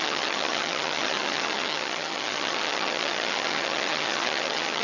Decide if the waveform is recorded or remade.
remade